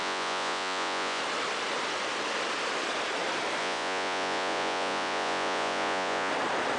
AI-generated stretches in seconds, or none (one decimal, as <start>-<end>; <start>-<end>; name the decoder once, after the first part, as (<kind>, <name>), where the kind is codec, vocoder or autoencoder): 0.0-1.2 (vocoder, Vocos); 3.6-6.3